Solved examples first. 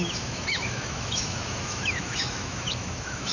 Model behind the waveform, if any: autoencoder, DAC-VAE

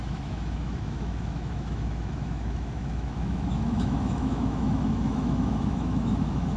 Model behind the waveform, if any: autoencoder, DAC-VAE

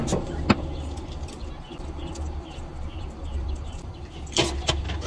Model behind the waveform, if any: none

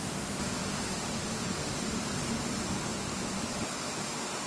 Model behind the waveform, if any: none